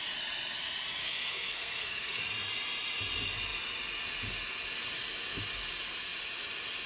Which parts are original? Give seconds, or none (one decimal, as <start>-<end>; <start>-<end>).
0.0-1.0; 2.2-6.9